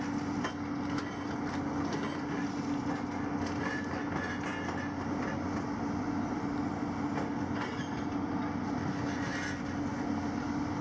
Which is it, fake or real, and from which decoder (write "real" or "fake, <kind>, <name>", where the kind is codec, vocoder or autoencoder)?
real